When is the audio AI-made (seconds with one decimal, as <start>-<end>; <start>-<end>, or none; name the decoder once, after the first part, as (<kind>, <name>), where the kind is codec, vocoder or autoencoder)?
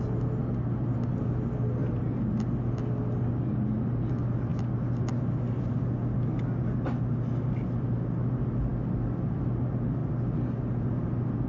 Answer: none